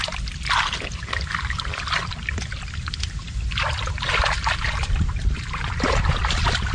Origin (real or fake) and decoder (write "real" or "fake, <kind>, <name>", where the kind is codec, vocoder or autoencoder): real